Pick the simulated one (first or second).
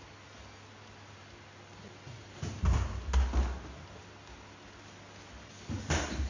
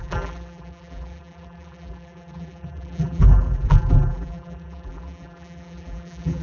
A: second